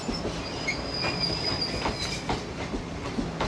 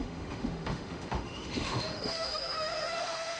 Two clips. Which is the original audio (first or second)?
first